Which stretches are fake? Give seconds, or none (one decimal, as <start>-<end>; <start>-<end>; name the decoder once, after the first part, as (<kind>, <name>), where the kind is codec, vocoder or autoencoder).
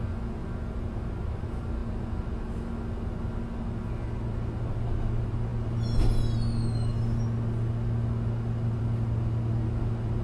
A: none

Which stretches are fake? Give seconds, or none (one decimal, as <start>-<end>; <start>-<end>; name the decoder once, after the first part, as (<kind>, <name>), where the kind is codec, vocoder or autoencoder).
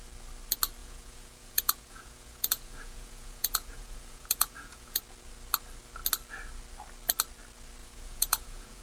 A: 0.8-5.0 (vocoder, Vocos); 7.8-8.8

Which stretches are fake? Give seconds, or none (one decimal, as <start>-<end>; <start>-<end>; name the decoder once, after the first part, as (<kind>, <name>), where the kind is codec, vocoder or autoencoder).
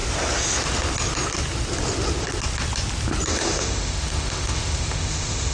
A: 3.3-5.5 (autoencoder, DAC-VAE)